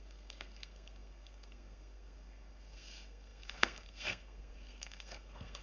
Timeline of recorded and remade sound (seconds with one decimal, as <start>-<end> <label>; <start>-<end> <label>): 0.0-5.6 remade